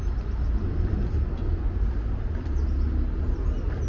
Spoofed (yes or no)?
no